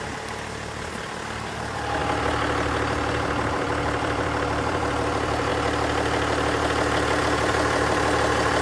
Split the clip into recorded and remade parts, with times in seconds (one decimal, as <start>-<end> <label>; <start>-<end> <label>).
0.0-2.0 remade; 2.0-3.5 recorded; 3.5-5.5 remade; 5.5-7.2 recorded; 7.2-8.6 remade